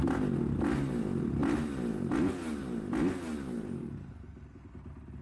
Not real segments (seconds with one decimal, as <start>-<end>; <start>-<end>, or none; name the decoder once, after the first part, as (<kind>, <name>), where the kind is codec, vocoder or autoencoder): none